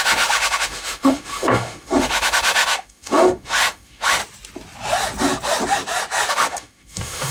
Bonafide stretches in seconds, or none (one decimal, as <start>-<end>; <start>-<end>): 4.2-6.3